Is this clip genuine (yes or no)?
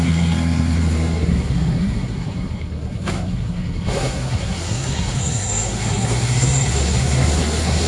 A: no